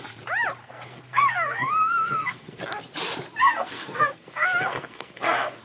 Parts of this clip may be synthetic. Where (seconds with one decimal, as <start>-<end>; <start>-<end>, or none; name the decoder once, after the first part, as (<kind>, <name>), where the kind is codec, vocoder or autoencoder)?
0.6-2.6 (codec, SNAC); 3.4-5.6